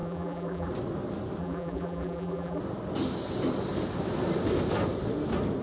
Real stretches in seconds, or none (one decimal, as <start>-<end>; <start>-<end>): 0.7-1.4; 2.6-5.6